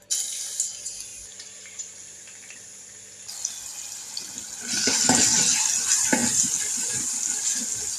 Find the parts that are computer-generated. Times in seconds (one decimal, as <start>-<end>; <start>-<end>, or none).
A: 1.1-3.0